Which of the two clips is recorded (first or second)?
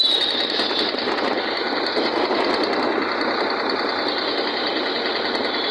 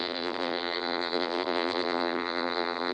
first